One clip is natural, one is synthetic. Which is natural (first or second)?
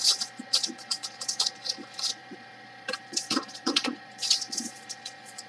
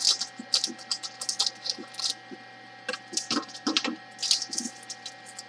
second